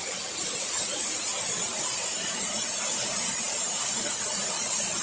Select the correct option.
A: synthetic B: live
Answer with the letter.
A